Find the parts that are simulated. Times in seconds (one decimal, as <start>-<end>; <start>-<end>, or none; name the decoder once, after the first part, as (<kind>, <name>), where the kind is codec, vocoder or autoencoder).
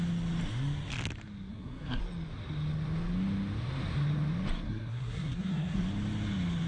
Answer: 1.5-2.0 (codec, SNAC); 4.5-5.8